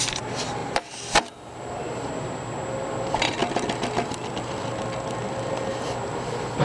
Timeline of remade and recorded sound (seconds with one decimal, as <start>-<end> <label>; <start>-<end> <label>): 0.0-3.4 remade; 3.4-4.1 recorded; 4.1-6.6 remade